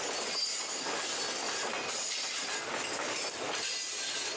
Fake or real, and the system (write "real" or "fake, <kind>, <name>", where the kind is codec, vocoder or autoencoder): real